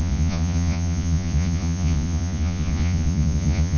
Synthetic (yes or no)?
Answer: yes